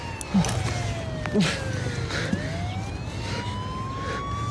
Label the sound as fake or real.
real